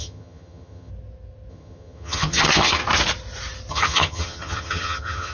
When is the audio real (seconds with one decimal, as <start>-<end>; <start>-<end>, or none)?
0.9-1.5; 2.8-3.7

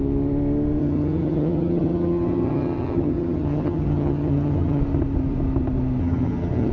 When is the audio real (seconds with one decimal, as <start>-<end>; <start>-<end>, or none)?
0.0-0.8; 4.8-6.0

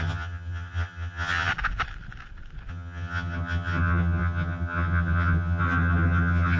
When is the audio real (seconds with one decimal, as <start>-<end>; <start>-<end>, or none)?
1.5-2.7

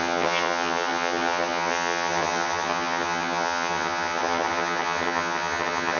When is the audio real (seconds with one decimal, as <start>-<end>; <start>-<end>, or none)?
none

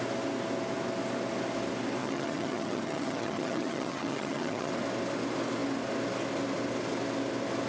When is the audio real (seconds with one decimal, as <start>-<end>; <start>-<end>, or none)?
0.0-2.0; 4.7-7.7